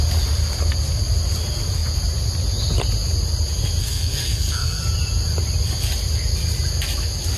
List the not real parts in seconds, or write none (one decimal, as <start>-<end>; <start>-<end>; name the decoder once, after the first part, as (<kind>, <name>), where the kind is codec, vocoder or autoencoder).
3.8-4.8 (codec, SNAC)